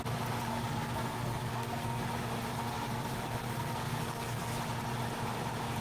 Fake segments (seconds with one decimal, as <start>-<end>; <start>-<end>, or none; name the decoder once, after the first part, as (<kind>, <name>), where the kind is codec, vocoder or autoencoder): 0.5-2.0 (codec, SNAC); 2.5-4.5